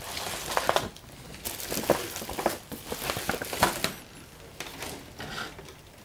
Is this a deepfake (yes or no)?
no